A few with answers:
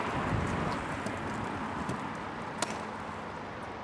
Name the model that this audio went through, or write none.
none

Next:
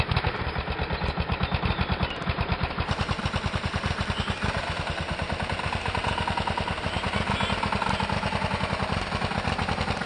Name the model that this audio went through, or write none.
none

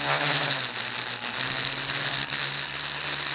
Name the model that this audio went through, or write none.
none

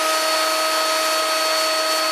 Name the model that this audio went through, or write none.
none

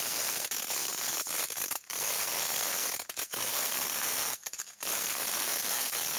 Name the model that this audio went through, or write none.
codec, SNAC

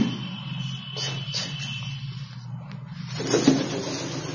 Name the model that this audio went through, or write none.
none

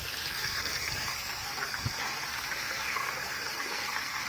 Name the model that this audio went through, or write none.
codec, SNAC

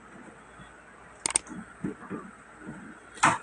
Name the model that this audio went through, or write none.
none